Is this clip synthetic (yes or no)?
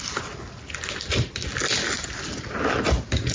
no